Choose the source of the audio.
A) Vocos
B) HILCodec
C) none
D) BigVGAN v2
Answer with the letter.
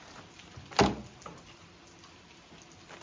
C